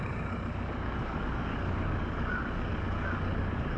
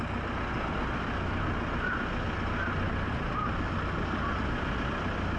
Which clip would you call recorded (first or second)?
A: second